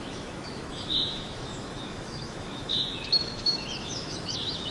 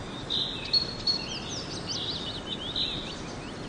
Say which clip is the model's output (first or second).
first